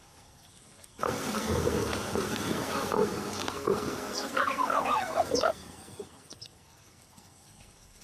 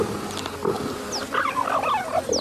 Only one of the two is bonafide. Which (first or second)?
second